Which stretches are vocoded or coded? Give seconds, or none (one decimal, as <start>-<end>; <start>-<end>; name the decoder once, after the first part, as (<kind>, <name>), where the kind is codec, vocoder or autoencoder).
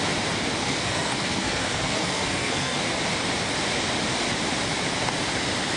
0.6-2.8 (codec, SNAC)